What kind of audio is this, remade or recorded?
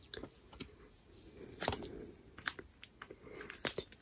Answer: recorded